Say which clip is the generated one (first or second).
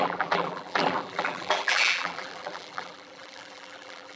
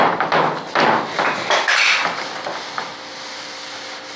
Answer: first